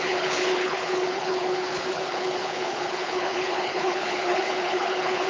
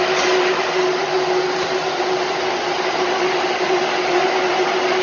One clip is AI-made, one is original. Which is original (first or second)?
second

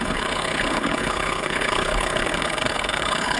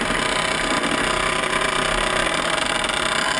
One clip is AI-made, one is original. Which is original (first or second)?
second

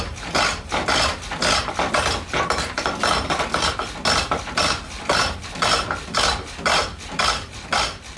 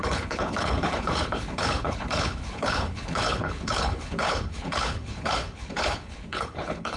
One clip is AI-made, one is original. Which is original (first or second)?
first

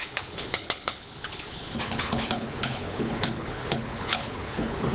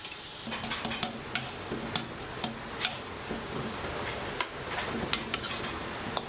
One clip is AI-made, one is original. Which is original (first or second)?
second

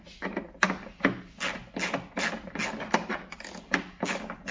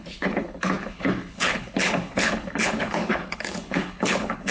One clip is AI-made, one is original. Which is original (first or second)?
first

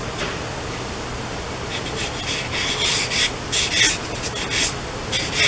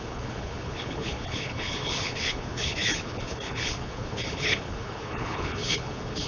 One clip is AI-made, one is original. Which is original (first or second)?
first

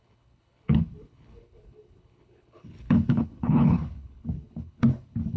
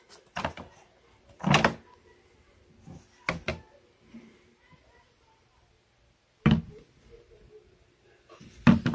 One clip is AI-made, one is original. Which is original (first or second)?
second